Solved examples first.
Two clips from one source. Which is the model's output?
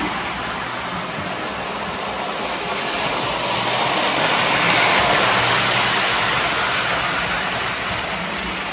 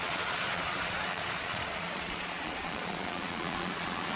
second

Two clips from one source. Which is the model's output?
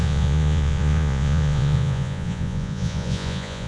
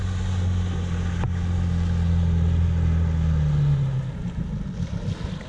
first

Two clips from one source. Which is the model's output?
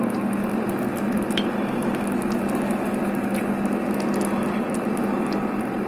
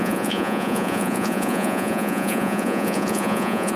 second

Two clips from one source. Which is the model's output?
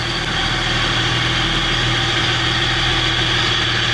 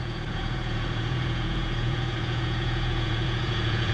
second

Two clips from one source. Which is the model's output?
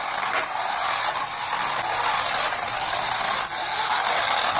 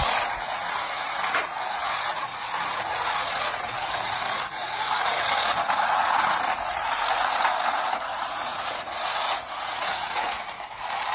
second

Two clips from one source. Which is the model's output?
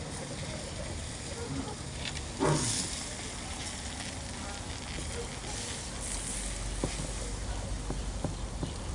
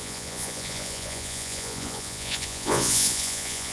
second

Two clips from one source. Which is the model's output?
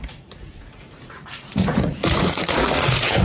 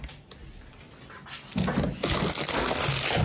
first